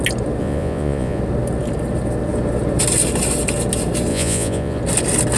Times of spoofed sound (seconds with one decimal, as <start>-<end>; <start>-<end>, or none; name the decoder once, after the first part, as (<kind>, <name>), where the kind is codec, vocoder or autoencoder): 0.4-1.2 (vocoder, Vocos); 4.1-4.8